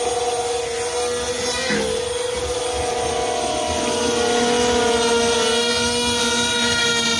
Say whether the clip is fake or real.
real